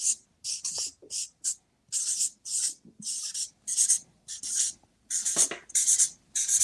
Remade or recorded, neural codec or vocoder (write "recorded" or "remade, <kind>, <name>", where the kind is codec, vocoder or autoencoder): recorded